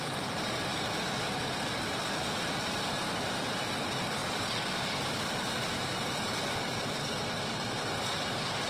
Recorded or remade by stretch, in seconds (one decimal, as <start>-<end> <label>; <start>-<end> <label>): 0.0-4.2 recorded; 4.2-6.6 remade; 6.6-8.7 recorded